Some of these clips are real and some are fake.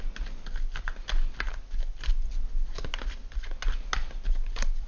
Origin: real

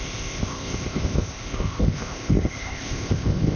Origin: fake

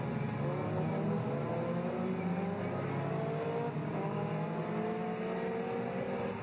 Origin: real